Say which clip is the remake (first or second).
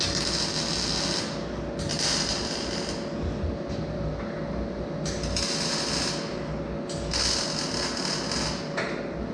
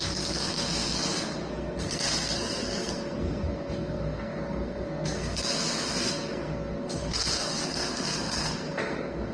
second